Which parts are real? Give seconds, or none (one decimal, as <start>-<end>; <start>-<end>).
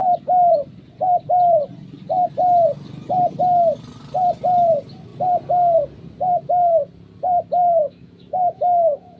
0.0-7.6